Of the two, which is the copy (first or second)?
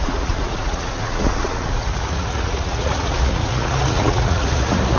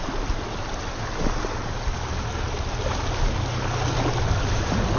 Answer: first